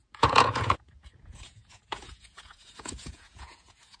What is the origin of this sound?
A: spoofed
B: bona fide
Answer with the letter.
A